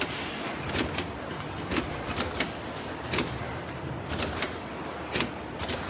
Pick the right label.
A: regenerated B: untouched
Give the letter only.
B